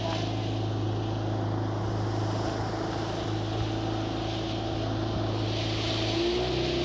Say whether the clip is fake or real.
real